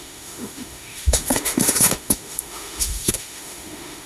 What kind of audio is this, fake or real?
fake